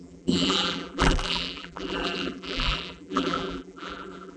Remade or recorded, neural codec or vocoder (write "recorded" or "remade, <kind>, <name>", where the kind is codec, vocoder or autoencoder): remade, vocoder, BigVGAN v2